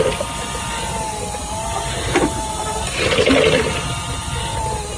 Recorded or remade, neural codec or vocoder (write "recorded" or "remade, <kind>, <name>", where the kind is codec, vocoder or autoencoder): recorded